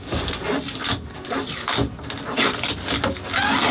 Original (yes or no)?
yes